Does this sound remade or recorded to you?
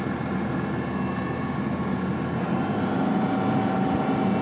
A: recorded